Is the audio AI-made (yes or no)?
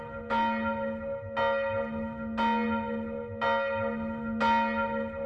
no